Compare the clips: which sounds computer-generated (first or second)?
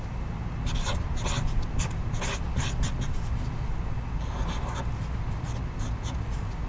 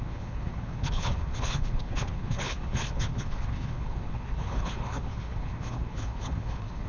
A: second